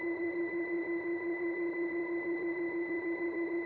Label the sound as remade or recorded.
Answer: remade